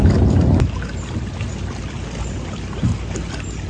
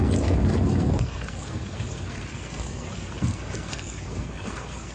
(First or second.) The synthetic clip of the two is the second